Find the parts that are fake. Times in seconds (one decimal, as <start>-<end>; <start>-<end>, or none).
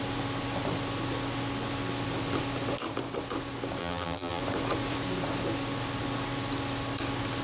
3.8-4.4